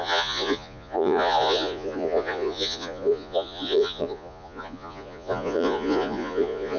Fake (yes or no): yes